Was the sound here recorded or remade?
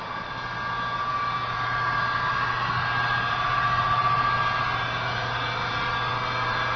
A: recorded